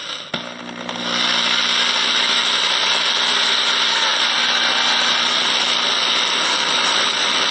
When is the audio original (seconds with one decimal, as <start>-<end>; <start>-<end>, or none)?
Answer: 0.0-7.5

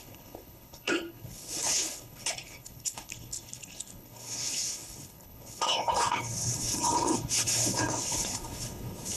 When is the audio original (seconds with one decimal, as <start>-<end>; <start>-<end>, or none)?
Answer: none

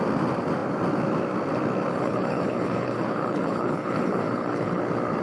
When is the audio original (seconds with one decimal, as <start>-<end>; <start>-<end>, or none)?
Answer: 0.0-1.9; 4.8-5.2

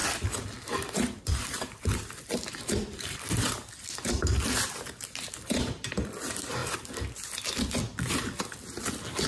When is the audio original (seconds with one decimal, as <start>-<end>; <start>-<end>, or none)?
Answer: 4.8-9.3